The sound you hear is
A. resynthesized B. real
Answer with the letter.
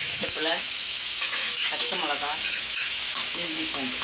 A